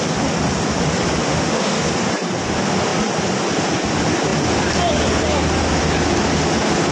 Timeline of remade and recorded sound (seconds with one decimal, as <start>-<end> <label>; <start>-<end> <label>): 0.0-1.2 recorded; 1.2-1.8 remade; 1.8-6.9 recorded